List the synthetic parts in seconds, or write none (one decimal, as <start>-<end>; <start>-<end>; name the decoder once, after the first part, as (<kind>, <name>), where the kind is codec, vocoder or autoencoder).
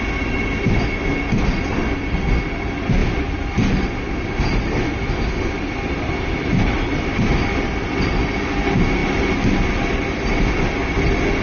none